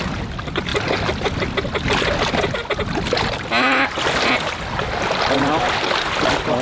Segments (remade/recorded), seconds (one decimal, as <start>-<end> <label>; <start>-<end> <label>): 0.0-6.6 recorded

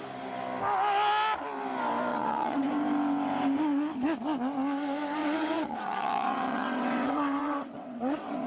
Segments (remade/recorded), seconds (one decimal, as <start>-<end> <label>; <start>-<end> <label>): 0.0-2.1 recorded; 2.1-2.7 remade; 2.7-5.2 recorded; 5.2-8.5 remade

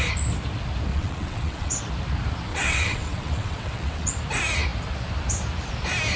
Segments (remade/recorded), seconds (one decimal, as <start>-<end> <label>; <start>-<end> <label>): 0.0-0.9 recorded; 0.9-1.8 remade; 1.8-2.5 recorded; 2.5-4.1 remade; 4.1-6.2 recorded